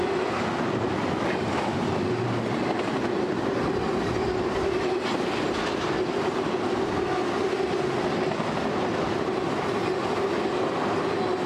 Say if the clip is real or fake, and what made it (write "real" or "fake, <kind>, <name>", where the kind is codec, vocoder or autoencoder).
real